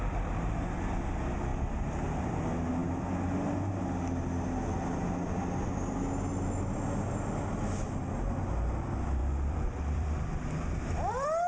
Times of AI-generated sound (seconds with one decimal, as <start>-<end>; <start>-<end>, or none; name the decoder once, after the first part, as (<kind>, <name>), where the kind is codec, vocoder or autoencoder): 6.3-7.1 (vocoder, BigVGAN v2); 9.2-11.5